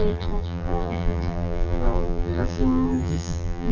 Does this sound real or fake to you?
fake